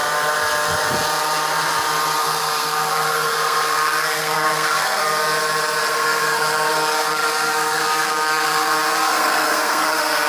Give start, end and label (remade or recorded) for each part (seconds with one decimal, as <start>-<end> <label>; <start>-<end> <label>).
0.0-2.2 recorded; 2.2-5.0 remade; 5.0-5.9 recorded; 5.9-10.3 remade